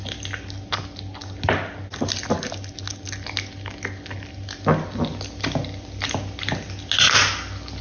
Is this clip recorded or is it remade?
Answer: recorded